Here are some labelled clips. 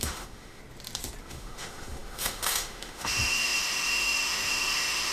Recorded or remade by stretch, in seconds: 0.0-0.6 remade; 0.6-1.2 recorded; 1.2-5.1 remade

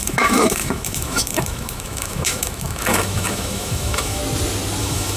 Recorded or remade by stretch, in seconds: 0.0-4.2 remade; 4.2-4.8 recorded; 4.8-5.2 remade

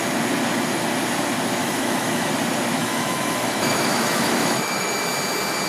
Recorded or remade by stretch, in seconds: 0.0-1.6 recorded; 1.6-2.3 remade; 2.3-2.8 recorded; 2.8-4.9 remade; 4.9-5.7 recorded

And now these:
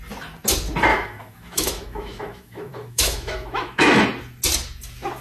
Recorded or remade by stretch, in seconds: 0.0-0.9 recorded; 0.9-4.0 remade; 4.0-5.2 recorded

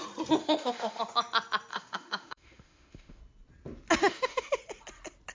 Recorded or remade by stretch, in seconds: 0.0-0.4 recorded; 0.4-1.0 remade; 1.0-1.7 recorded; 1.7-3.2 remade; 3.2-4.0 recorded; 4.0-4.6 remade; 4.6-5.3 recorded

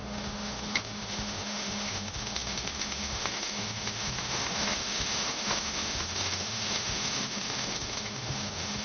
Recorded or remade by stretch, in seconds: 0.0-8.8 remade